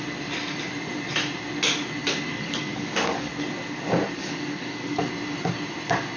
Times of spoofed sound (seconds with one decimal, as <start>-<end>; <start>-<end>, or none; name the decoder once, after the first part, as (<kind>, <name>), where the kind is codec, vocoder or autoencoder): 2.3-3.3 (codec, DAC); 4.2-5.1